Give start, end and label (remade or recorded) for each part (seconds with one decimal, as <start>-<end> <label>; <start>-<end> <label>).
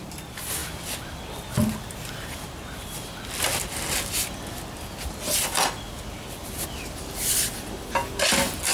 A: 0.0-0.6 recorded; 0.6-1.2 remade; 1.2-8.7 recorded